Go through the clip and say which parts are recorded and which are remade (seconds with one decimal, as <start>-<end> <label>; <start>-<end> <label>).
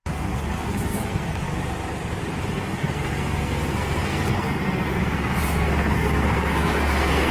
0.0-1.6 remade; 1.6-2.5 recorded; 2.5-7.3 remade